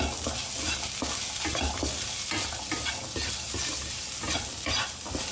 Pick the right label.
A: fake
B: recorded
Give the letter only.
B